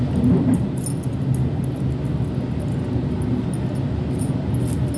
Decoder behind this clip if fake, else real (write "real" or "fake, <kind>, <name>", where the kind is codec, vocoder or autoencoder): real